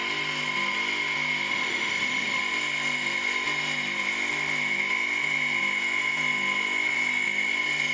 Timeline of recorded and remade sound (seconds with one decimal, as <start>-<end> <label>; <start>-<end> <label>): 0.0-1.5 recorded; 1.5-2.4 remade; 2.4-7.9 recorded